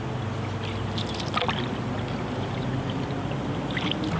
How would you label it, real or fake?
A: real